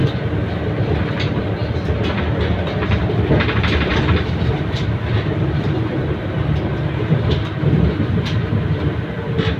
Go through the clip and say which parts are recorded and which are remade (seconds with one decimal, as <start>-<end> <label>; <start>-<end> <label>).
0.0-0.9 recorded; 0.9-1.6 remade; 1.6-3.0 recorded; 3.0-9.6 remade